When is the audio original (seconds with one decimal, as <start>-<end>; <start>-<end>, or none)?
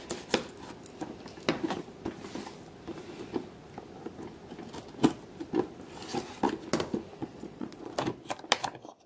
0.0-7.2; 7.9-9.1